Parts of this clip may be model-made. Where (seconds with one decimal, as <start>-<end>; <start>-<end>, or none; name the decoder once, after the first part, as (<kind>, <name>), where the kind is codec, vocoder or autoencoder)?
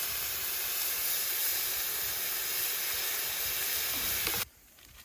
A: 0.0-1.4 (vocoder, BigVGAN v2); 4.4-5.0